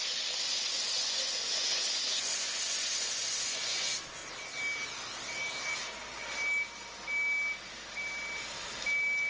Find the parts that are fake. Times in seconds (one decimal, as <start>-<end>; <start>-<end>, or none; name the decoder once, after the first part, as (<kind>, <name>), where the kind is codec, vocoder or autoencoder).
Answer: 0.5-4.2 (vocoder, Vocos)